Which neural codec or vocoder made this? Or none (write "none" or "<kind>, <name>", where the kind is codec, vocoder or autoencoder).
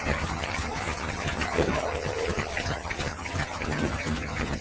vocoder, HiFi-GAN